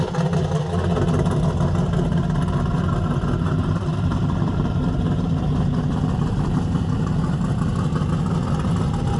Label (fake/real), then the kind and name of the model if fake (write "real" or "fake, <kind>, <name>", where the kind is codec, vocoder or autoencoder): real